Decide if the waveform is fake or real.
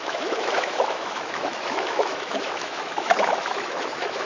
fake